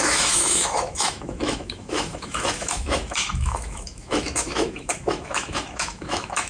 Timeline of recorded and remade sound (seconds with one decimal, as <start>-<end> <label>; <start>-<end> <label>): 0.0-6.5 remade